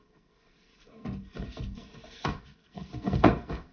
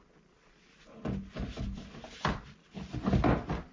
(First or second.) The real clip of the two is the second